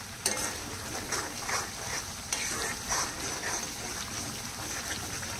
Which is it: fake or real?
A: real